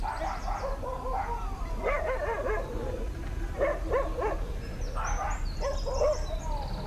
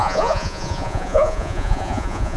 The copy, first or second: second